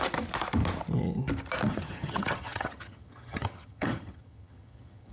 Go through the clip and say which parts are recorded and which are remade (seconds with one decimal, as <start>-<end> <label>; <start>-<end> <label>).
0.0-1.7 recorded; 1.7-5.1 remade